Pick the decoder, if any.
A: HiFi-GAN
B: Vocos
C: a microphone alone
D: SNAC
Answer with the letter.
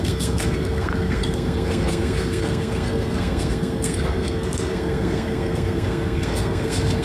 D